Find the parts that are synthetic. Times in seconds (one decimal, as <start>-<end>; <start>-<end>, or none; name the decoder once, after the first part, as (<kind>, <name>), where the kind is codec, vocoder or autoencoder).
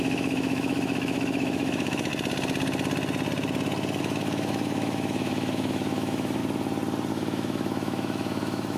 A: 0.0-2.1 (autoencoder, DAC-VAE); 4.0-6.4; 7.1-8.8